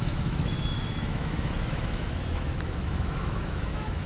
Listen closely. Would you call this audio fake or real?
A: fake